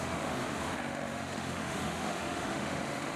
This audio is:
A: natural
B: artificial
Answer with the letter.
B